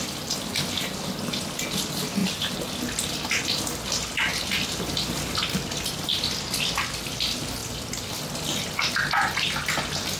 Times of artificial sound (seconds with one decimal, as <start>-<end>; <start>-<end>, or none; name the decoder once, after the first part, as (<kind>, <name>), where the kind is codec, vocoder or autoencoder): none